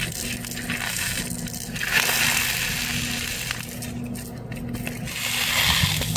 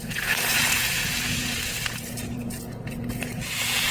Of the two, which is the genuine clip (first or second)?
first